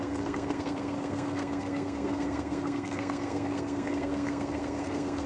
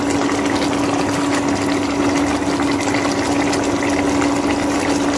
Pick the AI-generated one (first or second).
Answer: first